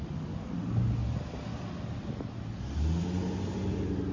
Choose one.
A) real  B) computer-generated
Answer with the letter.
A